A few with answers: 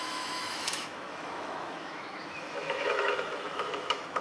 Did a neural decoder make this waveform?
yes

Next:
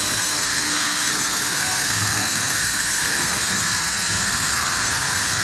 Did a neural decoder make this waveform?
yes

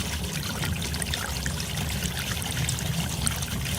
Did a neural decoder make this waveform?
no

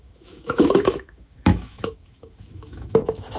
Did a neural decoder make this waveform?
yes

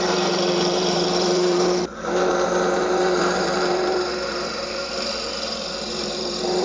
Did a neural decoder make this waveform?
yes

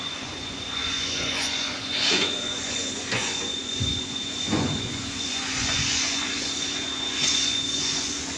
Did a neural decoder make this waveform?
yes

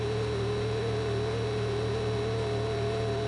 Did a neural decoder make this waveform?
no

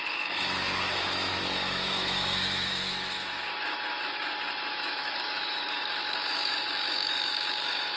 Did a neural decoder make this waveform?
yes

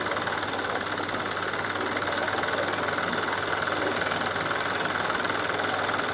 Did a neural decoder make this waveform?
no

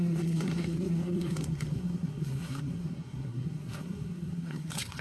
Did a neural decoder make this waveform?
yes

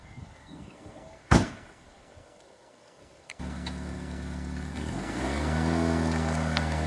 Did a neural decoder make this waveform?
yes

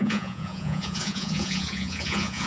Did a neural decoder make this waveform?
yes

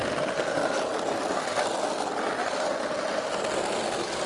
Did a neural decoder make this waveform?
no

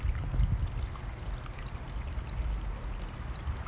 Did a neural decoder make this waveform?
no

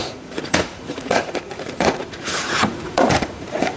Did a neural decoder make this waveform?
yes